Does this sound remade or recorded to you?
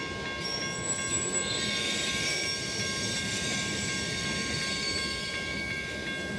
recorded